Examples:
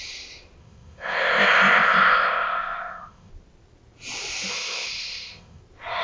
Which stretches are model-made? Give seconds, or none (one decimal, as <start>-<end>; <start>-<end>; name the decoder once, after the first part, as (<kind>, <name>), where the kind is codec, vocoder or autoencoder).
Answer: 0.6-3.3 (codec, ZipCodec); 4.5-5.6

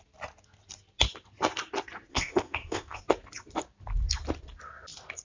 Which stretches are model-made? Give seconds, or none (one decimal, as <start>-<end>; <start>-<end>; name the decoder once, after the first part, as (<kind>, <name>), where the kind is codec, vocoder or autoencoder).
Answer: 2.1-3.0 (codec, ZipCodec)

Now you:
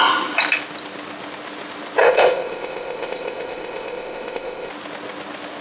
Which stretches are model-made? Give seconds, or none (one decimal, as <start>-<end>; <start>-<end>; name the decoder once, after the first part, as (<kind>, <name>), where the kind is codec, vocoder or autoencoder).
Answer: 2.0-4.7 (codec, ZipCodec)